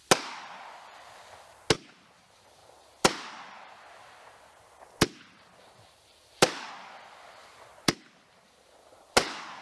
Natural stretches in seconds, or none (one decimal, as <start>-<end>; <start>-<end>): 0.0-7.4; 8.0-9.6